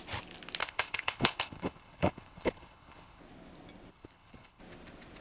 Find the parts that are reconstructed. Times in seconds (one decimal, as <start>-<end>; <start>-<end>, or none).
0.6-3.2; 3.9-4.6